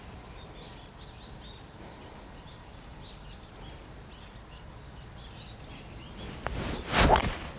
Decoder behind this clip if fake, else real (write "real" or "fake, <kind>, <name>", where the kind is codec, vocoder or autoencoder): real